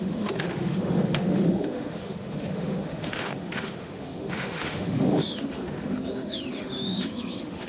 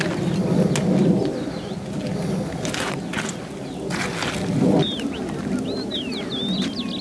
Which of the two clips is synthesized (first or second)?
first